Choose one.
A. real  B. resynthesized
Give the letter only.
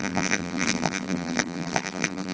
B